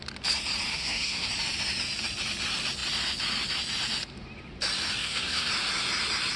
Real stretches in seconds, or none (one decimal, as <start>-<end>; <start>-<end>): 0.0-0.7; 1.3-5.0; 5.5-6.4